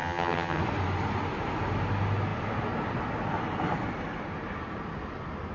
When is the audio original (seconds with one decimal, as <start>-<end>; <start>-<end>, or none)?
0.6-5.5